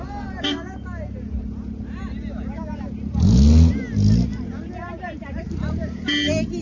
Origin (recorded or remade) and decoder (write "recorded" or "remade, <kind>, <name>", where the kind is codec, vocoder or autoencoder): recorded